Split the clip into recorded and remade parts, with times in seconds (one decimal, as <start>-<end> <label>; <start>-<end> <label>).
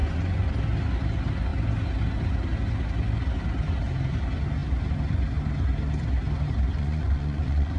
0.0-0.5 remade; 0.5-6.7 recorded; 6.7-7.8 remade